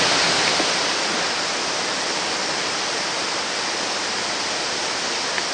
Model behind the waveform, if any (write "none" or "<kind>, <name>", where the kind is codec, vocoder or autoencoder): none